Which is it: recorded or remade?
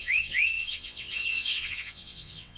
remade